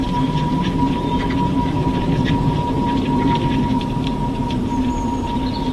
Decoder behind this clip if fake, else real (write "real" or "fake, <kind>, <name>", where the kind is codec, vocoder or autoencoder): fake, vocoder, BigVGAN v2